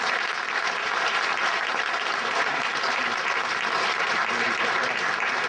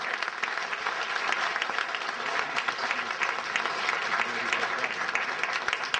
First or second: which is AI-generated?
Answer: first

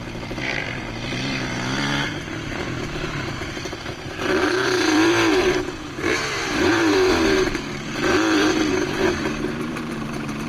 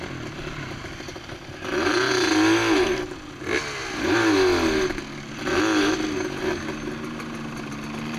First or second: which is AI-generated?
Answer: first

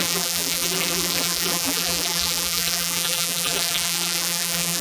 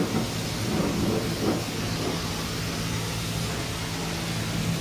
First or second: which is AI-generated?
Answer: first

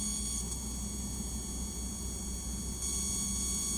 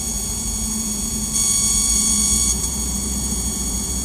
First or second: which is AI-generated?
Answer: second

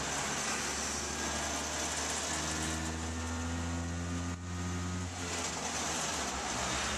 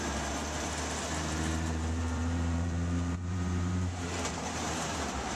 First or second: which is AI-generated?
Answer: second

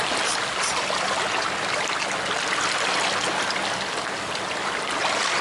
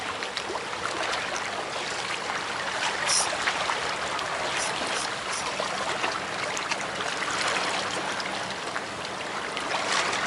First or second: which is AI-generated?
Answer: second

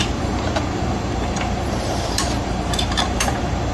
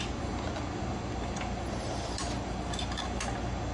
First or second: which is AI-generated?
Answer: first